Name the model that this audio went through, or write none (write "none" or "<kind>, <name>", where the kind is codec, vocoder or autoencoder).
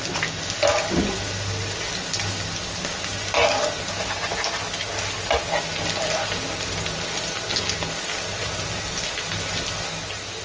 none